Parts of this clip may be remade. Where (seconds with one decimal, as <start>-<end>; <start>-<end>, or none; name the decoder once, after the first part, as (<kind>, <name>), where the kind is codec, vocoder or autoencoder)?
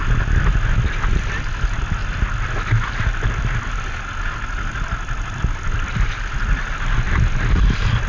none